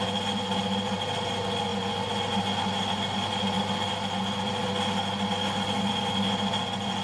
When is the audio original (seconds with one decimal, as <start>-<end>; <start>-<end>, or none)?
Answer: 0.0-7.0